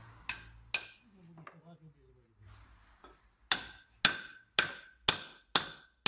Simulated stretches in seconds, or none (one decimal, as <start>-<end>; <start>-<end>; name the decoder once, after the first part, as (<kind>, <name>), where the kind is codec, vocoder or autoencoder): none